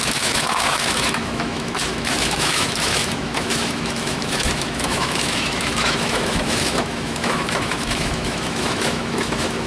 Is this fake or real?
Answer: fake